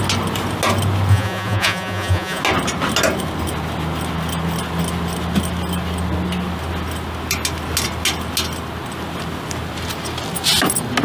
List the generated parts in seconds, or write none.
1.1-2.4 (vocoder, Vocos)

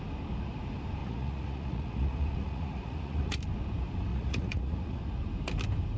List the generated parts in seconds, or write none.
1.0-3.4 (vocoder, Vocos); 4.1-5.0

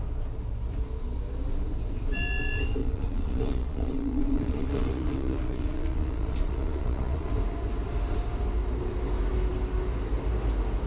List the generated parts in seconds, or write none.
2.8-7.3 (vocoder, Vocos)

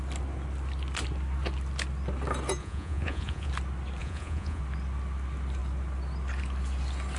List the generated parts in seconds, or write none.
2.6-3.5 (vocoder, Vocos); 4.0-4.6

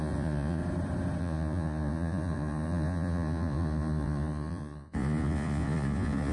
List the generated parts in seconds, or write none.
0.0-0.6 (vocoder, Vocos); 1.2-6.3

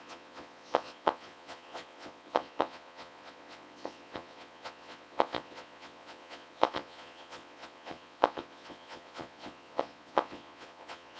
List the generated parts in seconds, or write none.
0.0-11.2 (vocoder, Vocos)